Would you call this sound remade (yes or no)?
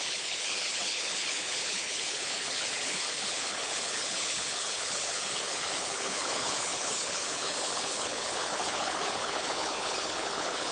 yes